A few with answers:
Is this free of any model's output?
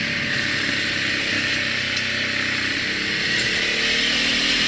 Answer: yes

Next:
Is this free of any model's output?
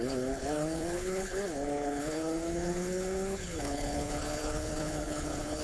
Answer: no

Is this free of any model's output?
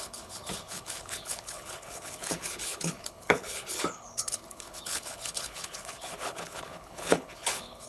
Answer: no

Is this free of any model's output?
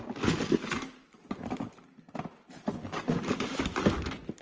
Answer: yes